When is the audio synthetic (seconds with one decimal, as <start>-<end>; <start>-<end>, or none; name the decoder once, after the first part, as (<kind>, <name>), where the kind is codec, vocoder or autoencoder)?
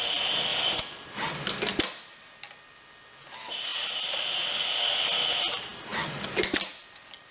none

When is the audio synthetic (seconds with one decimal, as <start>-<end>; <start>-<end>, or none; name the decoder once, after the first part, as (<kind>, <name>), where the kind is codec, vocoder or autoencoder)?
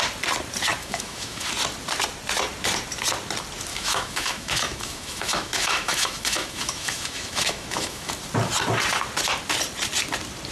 0.8-1.5 (autoencoder, DAC-VAE); 3.7-8.1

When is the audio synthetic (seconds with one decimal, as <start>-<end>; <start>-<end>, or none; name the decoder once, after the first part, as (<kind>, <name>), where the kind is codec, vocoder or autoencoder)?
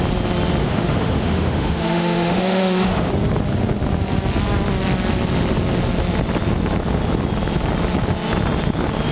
0.6-3.1 (autoencoder, DAC-VAE)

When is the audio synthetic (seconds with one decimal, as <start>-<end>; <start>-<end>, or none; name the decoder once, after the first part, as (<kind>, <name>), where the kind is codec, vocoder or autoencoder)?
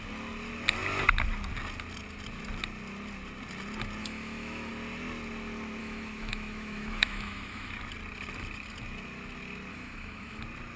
4.0-4.7 (autoencoder, DAC-VAE); 5.8-7.7; 9.7-10.4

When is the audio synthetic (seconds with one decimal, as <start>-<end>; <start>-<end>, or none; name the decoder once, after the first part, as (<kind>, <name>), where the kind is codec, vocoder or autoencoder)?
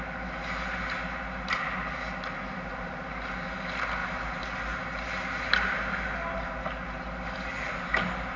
none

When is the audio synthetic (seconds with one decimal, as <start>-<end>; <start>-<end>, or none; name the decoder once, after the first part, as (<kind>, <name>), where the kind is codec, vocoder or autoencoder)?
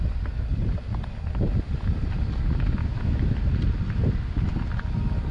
2.8-3.4 (autoencoder, DAC-VAE)